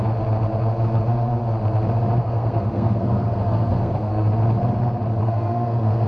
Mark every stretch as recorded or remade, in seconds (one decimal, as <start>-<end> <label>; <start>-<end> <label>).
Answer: 0.0-2.2 recorded; 2.2-4.1 remade; 4.1-5.2 recorded; 5.2-6.1 remade